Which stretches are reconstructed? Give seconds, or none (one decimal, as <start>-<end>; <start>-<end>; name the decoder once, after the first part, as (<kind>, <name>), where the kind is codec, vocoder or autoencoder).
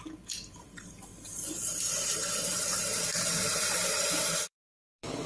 0.0-1.1 (vocoder, BigVGAN v2); 3.7-5.3